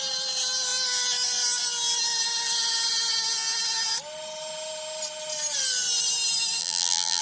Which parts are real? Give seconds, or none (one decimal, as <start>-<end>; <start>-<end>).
0.0-6.6

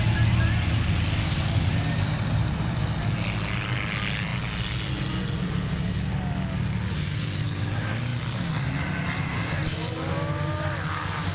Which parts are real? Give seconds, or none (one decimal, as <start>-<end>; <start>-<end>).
0.0-11.3